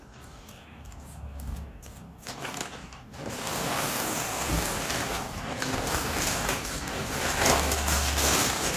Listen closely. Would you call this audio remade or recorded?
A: remade